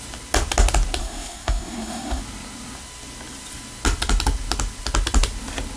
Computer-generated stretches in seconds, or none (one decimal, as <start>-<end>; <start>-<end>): 1.0-2.2